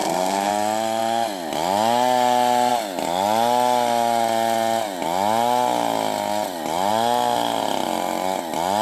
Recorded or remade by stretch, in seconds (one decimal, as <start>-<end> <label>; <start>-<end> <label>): 0.0-0.5 remade; 0.5-8.8 recorded